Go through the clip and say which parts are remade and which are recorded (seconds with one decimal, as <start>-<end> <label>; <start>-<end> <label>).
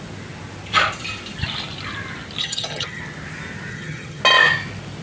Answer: 0.0-2.4 recorded; 2.4-3.0 remade; 3.0-3.7 recorded; 3.7-4.2 remade; 4.2-5.0 recorded